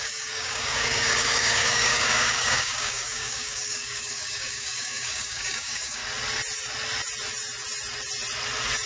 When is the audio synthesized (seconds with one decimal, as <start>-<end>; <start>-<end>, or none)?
0.0-6.0